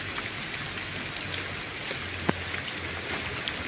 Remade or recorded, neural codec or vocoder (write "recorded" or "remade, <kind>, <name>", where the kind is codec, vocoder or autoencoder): recorded